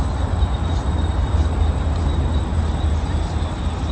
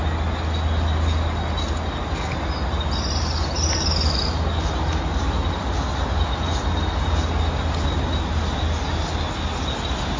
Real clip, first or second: second